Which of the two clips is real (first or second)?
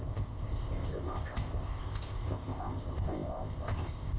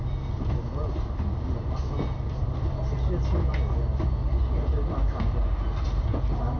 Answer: second